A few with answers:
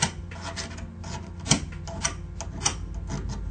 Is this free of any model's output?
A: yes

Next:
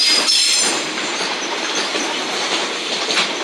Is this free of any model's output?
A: no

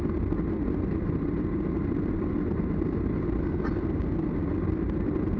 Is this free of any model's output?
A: yes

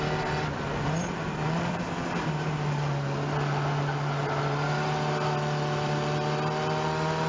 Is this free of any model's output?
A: yes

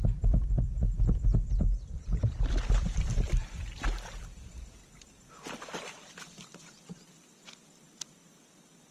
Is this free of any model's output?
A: no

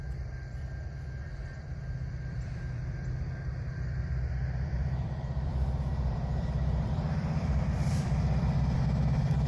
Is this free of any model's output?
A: no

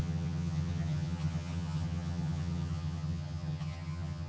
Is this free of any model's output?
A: no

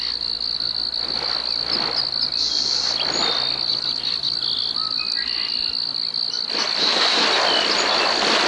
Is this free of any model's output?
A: yes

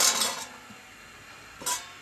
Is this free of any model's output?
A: yes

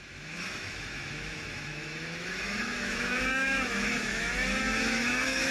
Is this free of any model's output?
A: no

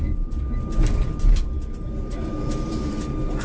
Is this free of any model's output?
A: no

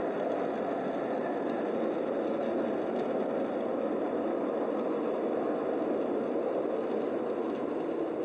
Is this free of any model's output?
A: yes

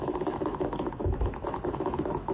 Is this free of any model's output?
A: no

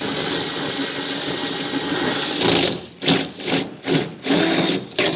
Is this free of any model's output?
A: yes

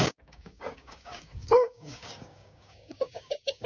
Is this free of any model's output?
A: no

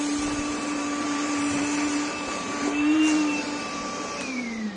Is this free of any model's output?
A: no